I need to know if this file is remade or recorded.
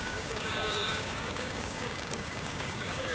remade